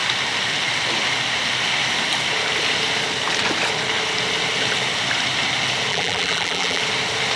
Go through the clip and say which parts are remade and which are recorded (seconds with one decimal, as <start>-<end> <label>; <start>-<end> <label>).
0.0-5.9 recorded; 5.9-6.8 remade; 6.8-7.4 recorded